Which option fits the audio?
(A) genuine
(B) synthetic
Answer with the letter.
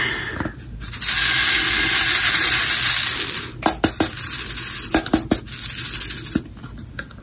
A